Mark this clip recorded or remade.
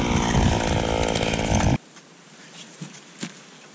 recorded